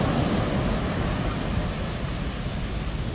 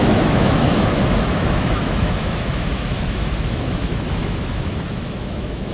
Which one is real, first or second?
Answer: first